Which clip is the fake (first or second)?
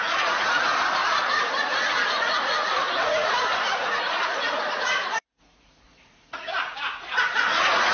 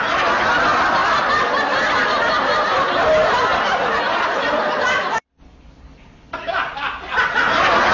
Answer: first